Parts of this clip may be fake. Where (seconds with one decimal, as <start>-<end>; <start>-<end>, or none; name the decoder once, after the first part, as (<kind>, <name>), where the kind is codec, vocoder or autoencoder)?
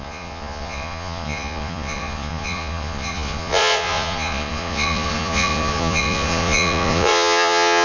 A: 0.0-7.8 (vocoder, Vocos)